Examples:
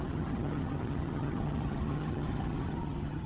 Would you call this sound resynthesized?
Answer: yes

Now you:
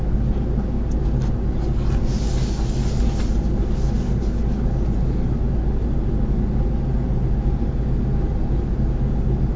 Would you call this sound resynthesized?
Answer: no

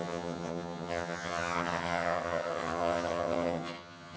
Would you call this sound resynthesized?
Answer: yes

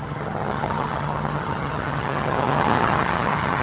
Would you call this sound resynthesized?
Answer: yes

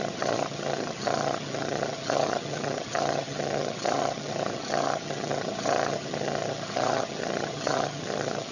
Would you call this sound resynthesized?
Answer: yes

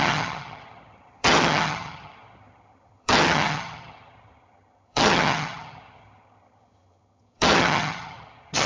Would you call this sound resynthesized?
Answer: yes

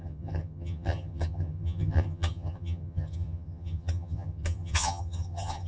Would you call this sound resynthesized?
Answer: yes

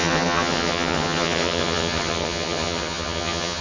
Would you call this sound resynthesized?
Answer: yes